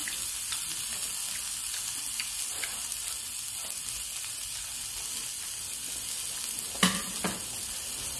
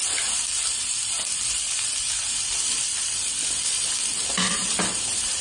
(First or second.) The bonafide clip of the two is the first